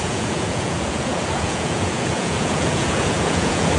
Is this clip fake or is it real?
fake